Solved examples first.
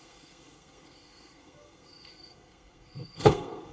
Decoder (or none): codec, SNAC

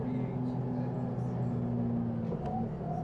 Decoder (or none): none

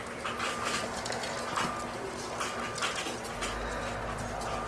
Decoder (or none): none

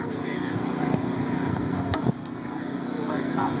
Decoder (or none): codec, SNAC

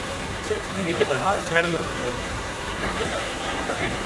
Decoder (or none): codec, SNAC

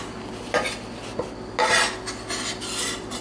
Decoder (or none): none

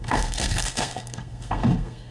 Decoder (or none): codec, SNAC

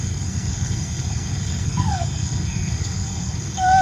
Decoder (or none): codec, SNAC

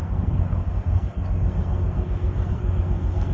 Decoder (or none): codec, SNAC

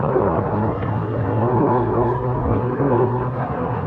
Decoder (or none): codec, SNAC